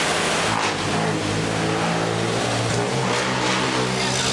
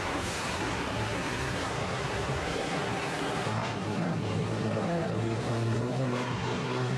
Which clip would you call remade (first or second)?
second